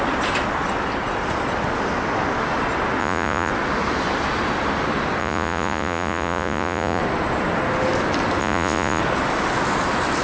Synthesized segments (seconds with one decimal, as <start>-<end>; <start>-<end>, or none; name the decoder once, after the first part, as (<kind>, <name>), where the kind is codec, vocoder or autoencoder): 3.0-3.5 (vocoder, Vocos); 5.2-7.0; 8.4-9.0